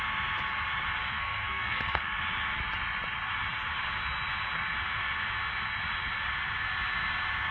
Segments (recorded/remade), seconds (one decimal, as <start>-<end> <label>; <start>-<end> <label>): 0.0-1.1 recorded; 1.1-2.2 remade; 2.2-7.5 recorded